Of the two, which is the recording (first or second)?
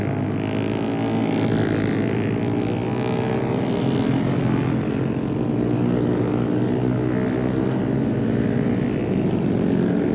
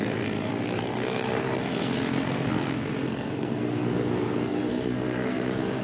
first